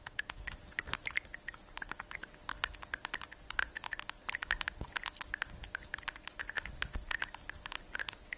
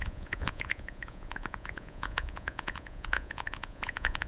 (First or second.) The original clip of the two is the first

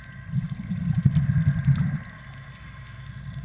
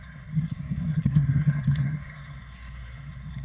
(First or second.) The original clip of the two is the first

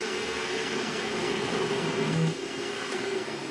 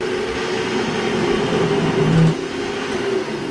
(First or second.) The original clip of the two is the second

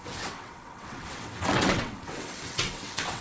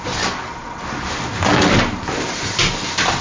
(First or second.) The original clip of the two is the second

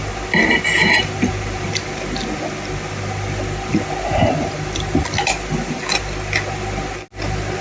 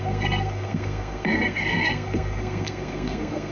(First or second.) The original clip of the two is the first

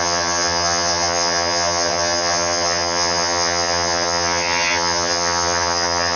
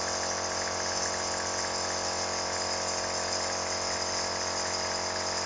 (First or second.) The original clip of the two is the second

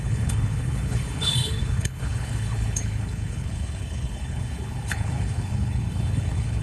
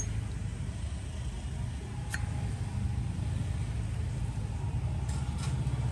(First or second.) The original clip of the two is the second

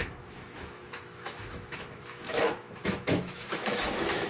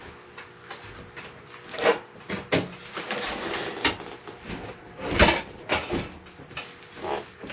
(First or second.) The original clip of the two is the second